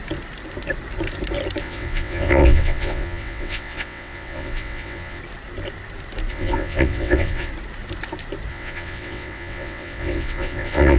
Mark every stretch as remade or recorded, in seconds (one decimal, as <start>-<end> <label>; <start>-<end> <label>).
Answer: 0.0-1.6 recorded; 1.6-5.2 remade; 5.2-6.3 recorded; 6.3-7.5 remade; 7.5-8.5 recorded; 8.5-11.0 remade